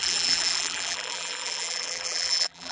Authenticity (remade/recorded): remade